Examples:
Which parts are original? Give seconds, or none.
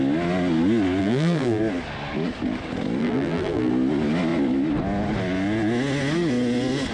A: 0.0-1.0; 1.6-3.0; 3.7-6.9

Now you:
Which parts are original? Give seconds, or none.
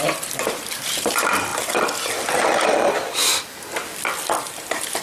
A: 1.5-4.4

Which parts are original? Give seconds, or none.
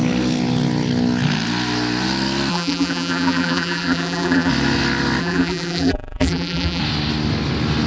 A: 0.0-2.5; 4.5-5.2; 6.8-7.9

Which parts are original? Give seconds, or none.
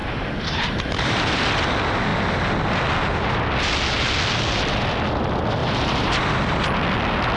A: 1.5-5.6; 6.2-7.4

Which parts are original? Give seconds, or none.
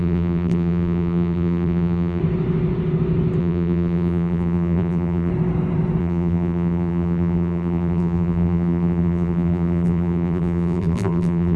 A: 2.2-3.4; 5.3-6.0